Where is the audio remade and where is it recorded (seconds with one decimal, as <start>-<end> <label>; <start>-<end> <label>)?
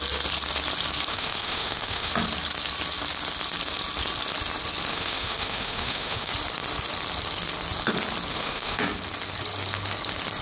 0.0-1.1 recorded; 1.1-2.1 remade; 2.1-4.9 recorded; 4.9-6.3 remade; 6.3-8.3 recorded; 8.3-8.8 remade; 8.8-10.4 recorded